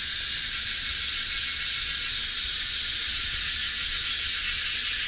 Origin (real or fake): fake